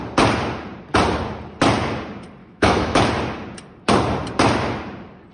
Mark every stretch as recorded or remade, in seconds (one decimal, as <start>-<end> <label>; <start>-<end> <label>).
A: 0.0-2.4 recorded; 2.4-3.0 remade; 3.0-5.3 recorded